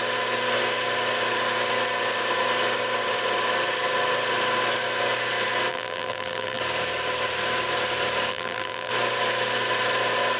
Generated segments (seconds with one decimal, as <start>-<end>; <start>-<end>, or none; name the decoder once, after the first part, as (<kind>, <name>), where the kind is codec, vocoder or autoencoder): 5.7-6.6 (vocoder, BigVGAN v2); 8.3-8.9